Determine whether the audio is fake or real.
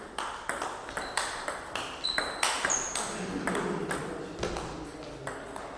real